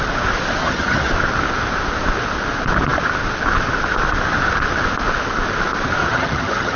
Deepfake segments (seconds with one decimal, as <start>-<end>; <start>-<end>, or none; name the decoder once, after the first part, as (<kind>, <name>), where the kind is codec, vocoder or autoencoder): 0.6-1.1 (vocoder, HiFi-GAN); 6.0-6.8